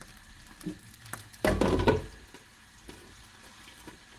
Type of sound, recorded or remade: recorded